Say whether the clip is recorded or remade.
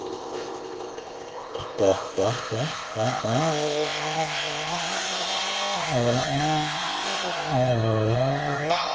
remade